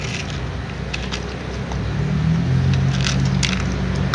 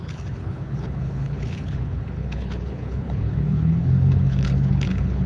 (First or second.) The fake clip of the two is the second